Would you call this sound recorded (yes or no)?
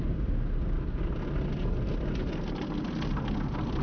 yes